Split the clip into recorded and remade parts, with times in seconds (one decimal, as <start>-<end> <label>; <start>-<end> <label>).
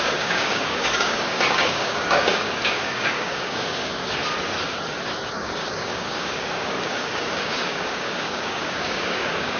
0.0-4.2 remade; 4.2-5.3 recorded; 5.3-9.6 remade